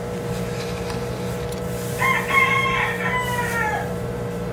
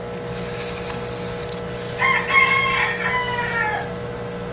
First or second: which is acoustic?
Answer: second